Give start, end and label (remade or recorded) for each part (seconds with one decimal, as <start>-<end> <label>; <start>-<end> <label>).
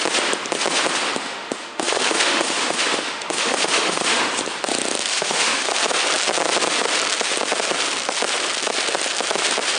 0.0-1.2 recorded; 1.2-4.2 remade; 4.2-5.1 recorded; 5.1-5.7 remade; 5.7-9.8 recorded